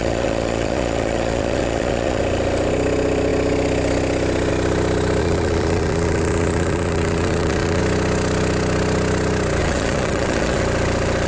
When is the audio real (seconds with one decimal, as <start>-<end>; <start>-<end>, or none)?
2.2-5.2; 7.8-9.6; 10.6-11.3